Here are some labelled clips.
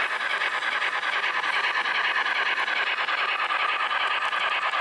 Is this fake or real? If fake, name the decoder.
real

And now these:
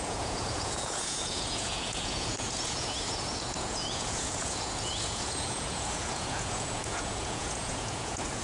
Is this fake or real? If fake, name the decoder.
fake, vocoder, Vocos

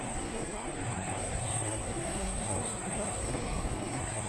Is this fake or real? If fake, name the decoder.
fake, codec, SNAC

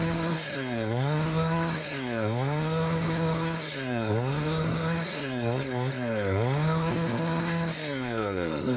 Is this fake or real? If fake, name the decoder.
fake, codec, SNAC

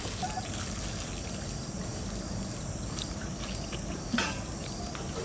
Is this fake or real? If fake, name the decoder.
real